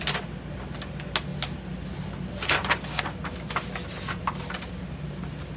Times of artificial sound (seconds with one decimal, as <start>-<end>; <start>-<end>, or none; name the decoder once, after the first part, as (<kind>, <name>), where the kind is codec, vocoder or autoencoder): none